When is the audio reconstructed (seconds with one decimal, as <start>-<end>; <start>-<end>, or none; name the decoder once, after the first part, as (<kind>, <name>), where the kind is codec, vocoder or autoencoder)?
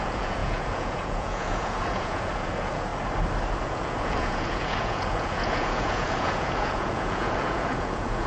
0.0-2.9 (vocoder, Vocos); 3.6-8.3